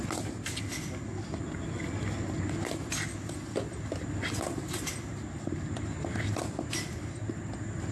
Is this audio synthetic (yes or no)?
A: no